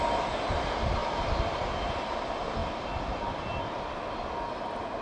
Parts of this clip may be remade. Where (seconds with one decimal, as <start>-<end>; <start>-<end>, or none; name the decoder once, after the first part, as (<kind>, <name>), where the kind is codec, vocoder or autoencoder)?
none